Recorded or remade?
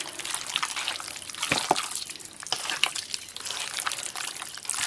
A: recorded